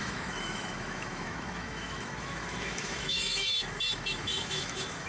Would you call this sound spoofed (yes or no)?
yes